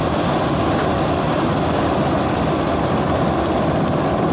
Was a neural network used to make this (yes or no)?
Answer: no